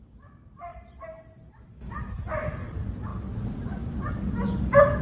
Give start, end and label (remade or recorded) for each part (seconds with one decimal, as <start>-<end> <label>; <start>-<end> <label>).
0.0-5.0 recorded